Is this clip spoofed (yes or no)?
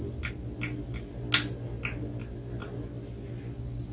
no